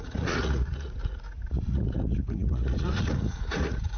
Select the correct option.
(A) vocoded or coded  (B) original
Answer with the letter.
A